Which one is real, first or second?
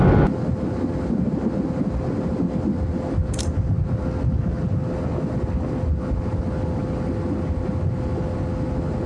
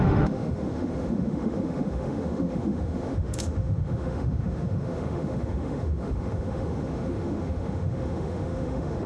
first